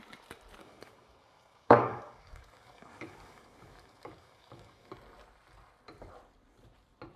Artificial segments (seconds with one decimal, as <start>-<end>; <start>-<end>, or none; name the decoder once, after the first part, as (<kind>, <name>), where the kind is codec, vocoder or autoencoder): 0.6-4.9 (codec, DAC)